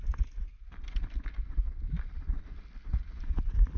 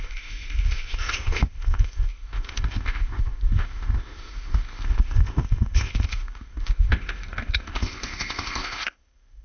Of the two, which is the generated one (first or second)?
second